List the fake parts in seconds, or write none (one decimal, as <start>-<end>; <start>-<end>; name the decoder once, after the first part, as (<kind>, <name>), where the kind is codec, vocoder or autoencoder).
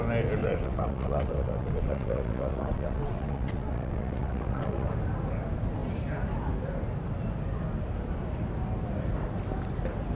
0.4-4.9 (vocoder, WaveNeXt)